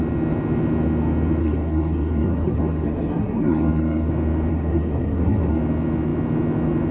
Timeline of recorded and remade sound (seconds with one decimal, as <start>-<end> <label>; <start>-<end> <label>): 0.0-1.4 recorded; 1.4-4.1 remade; 4.1-4.5 recorded; 4.5-5.6 remade; 5.6-6.9 recorded